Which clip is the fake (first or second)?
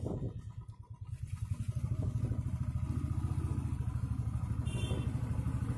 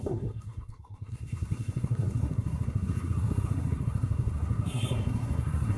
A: second